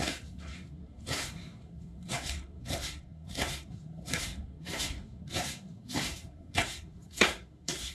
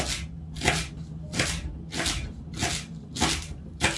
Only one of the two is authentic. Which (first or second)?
second